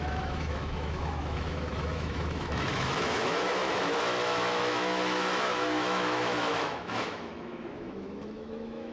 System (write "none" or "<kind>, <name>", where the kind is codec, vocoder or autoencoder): autoencoder, DAC-VAE